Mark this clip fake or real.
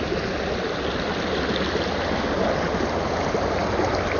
real